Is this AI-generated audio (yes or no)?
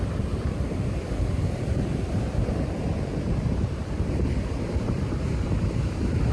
yes